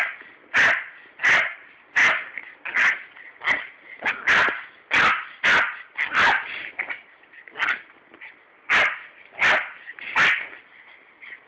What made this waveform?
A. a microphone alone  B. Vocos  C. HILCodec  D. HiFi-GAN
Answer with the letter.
A